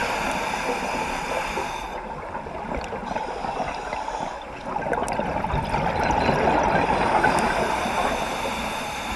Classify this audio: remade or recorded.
recorded